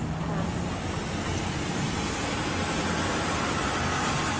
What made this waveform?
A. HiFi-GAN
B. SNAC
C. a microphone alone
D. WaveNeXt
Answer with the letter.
C